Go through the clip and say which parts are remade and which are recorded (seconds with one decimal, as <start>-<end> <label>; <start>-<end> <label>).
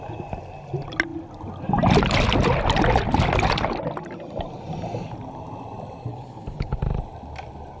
0.0-6.1 recorded; 6.1-6.8 remade; 6.8-7.8 recorded